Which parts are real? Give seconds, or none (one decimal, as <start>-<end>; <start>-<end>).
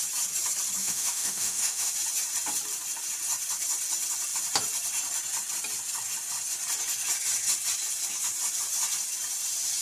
0.0-0.8; 1.9-9.8